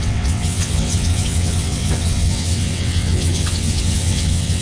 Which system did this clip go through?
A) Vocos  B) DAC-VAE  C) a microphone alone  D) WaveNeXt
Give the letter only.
D